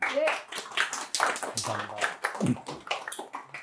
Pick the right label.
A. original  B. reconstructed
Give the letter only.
A